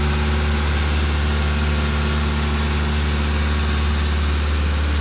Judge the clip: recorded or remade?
recorded